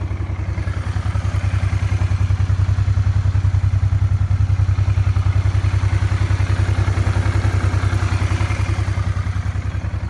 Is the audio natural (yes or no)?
yes